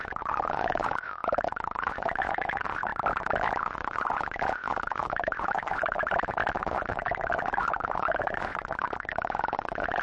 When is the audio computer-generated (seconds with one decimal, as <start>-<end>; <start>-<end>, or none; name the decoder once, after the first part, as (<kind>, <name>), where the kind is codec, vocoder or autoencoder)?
0.0-2.9 (vocoder, Vocos); 3.6-6.0; 6.6-10.0